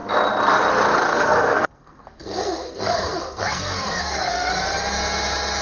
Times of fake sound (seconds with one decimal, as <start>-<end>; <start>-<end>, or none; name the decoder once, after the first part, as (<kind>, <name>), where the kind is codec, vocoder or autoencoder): 1.1-4.5 (codec, SNAC)